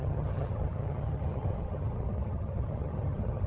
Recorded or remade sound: remade